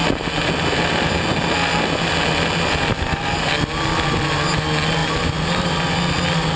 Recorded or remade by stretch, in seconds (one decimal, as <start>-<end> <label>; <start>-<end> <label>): 0.0-6.6 recorded

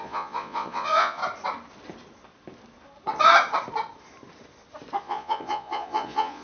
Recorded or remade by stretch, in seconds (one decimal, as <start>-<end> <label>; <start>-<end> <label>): 0.0-1.2 remade; 1.2-5.0 recorded; 5.0-6.4 remade

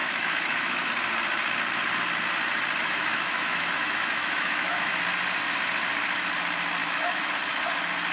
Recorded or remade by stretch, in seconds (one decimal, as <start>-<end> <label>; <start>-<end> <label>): 0.0-0.9 remade; 0.9-2.8 recorded; 2.8-5.0 remade; 5.0-6.8 recorded; 6.8-7.3 remade; 7.3-8.1 recorded

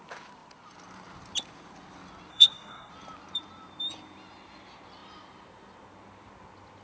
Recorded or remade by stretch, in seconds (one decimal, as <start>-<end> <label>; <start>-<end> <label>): 0.0-2.3 recorded; 2.3-2.9 remade; 2.9-6.8 recorded

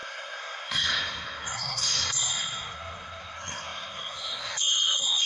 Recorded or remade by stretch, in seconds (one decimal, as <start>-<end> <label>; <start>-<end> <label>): 0.0-5.3 remade

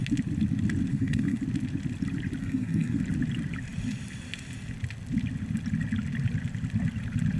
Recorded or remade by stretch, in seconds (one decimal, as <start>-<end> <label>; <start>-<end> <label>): 0.0-0.9 recorded; 0.9-1.4 remade; 1.4-2.4 recorded; 2.4-3.0 remade; 3.0-7.4 recorded

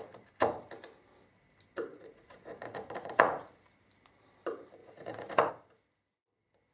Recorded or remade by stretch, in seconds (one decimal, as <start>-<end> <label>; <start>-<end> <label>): 0.0-1.9 recorded; 1.9-3.5 remade; 3.5-4.8 recorded; 4.8-5.5 remade; 5.5-6.7 recorded